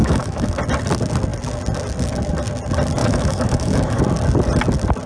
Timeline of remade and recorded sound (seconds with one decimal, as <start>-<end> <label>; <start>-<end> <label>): 0.0-0.5 remade; 0.5-3.0 recorded; 3.0-4.0 remade; 4.0-5.1 recorded

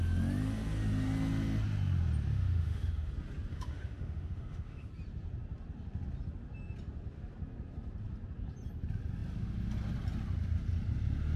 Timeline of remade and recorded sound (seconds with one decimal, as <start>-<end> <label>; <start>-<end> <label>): 0.0-2.3 recorded; 2.3-3.1 remade; 3.1-3.5 recorded; 3.5-4.9 remade; 4.9-11.4 recorded

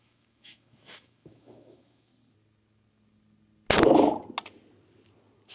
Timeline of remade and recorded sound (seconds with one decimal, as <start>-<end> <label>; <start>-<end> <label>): 0.0-2.1 remade; 2.1-5.5 recorded

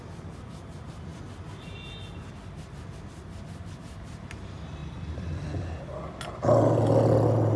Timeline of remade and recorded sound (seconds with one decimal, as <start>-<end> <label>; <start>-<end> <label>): 0.0-7.6 recorded